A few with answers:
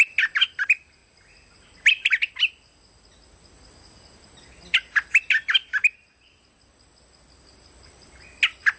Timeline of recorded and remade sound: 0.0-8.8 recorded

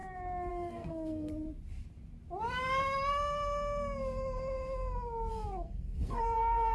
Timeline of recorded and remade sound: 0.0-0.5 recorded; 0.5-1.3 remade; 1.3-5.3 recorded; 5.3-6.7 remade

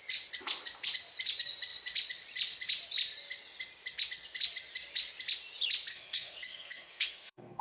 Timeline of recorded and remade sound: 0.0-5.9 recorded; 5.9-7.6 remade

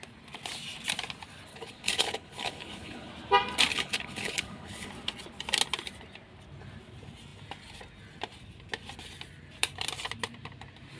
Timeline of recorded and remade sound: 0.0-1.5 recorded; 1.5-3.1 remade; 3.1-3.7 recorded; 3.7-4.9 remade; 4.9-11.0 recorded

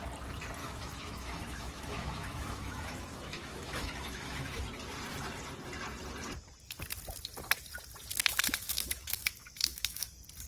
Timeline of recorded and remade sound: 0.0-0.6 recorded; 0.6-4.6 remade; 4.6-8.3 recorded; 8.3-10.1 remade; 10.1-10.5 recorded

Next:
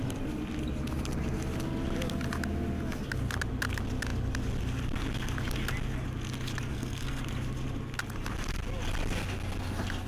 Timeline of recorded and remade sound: 0.0-6.7 recorded; 6.7-7.2 remade; 7.2-10.1 recorded

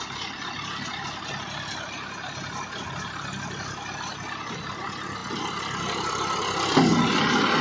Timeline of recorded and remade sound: 0.0-7.6 recorded

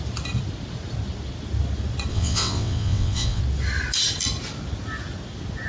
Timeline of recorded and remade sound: 0.0-2.1 recorded; 2.1-3.4 remade; 3.4-5.7 recorded